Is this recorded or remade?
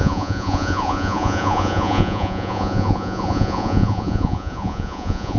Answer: remade